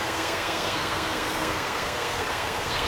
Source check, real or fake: fake